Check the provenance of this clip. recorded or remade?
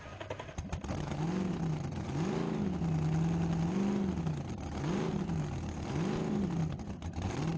recorded